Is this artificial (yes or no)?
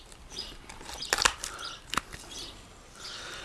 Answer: yes